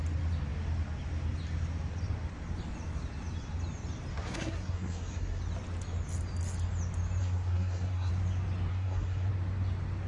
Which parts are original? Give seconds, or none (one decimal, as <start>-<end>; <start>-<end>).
0.0-4.1; 5.4-7.2; 8.1-8.7; 9.3-10.1